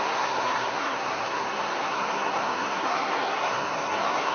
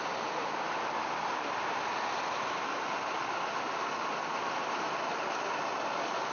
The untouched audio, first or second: second